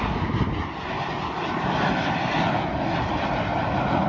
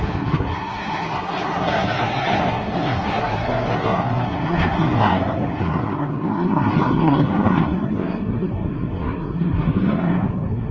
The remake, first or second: second